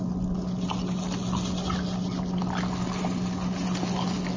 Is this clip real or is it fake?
real